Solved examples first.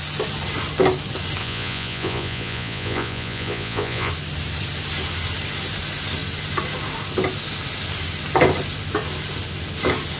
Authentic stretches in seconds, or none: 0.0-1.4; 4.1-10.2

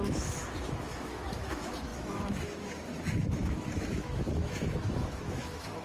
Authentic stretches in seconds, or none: none